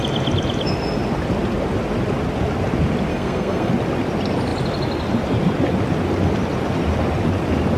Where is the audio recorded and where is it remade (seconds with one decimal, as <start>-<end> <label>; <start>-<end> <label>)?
0.0-3.1 recorded; 3.1-3.7 remade; 3.7-7.8 recorded